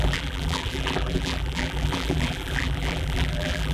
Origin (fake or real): fake